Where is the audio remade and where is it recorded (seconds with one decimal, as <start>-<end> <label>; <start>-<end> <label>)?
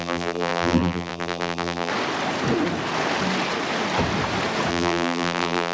0.0-1.9 remade; 1.9-4.7 recorded; 4.7-5.7 remade